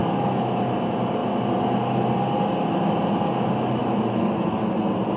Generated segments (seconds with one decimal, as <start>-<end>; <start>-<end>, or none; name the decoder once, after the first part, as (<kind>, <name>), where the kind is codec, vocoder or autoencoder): 0.0-0.6 (autoencoder, DAC-VAE); 3.8-4.7